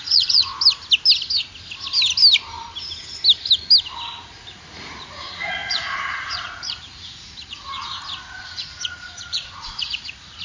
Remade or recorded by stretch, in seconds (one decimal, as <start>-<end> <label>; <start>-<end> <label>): 0.0-0.5 remade; 0.5-4.2 recorded; 4.2-10.4 remade